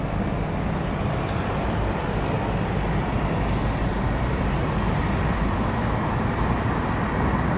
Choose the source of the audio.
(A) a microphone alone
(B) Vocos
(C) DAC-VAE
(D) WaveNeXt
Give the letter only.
A